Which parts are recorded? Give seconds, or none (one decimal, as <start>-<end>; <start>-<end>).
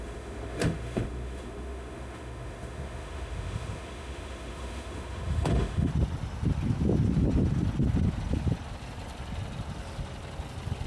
5.9-10.9